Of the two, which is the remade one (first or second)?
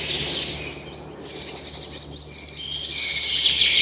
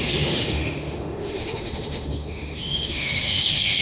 second